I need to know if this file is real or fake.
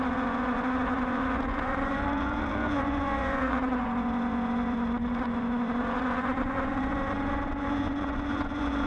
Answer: fake